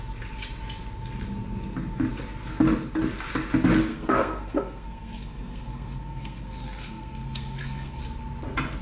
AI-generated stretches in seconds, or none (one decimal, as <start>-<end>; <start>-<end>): 3.9-8.0